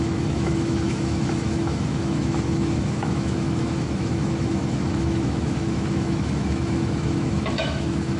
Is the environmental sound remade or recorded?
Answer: remade